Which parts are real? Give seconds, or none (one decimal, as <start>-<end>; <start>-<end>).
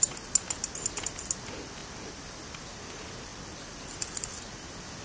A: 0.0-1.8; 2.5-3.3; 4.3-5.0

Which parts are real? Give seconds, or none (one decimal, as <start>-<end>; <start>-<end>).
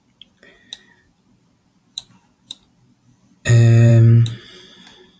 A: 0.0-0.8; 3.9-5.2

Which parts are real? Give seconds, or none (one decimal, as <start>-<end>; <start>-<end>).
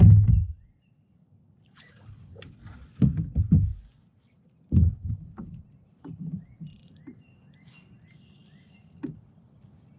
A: 0.0-10.0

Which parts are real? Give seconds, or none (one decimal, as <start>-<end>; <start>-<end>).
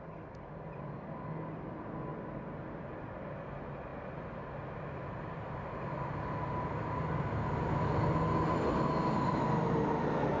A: 0.0-10.4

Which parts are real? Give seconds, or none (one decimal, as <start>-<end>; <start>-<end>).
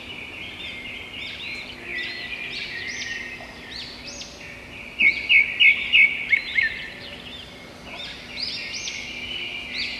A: 0.0-10.0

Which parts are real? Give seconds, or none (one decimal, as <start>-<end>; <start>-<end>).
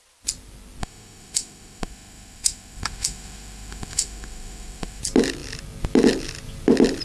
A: 0.0-0.8; 5.0-7.0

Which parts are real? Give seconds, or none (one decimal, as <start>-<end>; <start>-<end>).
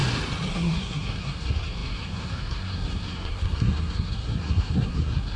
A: 0.0-0.5